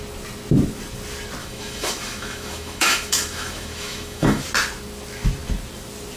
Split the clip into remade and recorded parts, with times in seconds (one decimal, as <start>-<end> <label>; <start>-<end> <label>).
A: 0.0-1.4 recorded; 1.4-4.4 remade; 4.4-6.2 recorded